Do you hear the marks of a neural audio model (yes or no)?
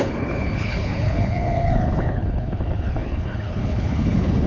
yes